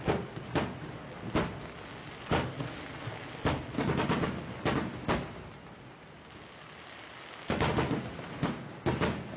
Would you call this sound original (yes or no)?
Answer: yes